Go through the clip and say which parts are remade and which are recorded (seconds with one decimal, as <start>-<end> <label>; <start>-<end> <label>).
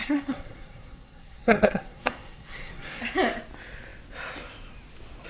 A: 0.0-3.0 remade; 3.0-5.3 recorded